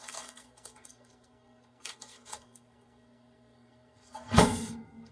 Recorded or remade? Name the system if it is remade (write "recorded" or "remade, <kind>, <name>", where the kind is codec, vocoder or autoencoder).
remade, codec, SNAC